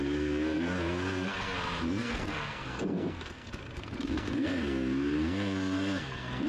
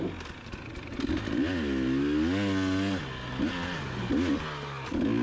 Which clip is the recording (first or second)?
second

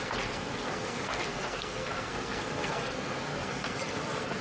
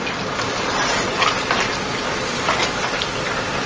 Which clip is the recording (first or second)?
second